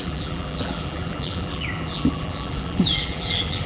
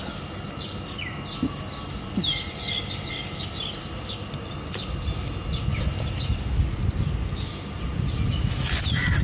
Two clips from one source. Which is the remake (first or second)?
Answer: first